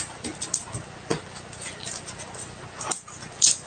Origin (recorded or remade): recorded